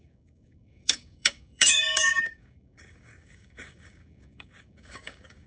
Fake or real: fake